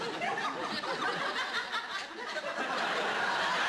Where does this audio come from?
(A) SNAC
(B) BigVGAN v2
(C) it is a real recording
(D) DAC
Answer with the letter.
C